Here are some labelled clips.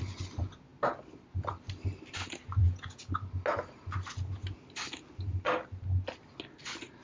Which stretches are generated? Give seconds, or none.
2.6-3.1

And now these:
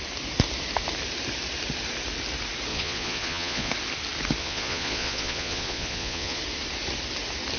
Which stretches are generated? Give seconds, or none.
2.7-3.7; 4.4-6.4

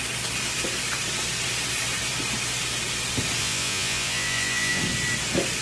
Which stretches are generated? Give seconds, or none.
3.4-4.8

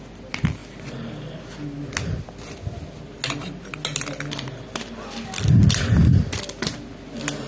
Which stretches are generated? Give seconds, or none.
none

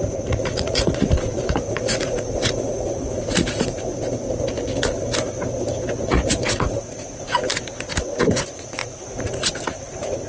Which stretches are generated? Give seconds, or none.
0.0-3.9; 6.0-7.5; 8.3-10.3